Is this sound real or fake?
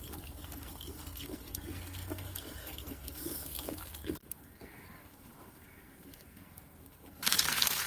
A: fake